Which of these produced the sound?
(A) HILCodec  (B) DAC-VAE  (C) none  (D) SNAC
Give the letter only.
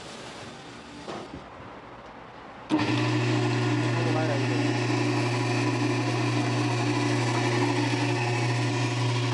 C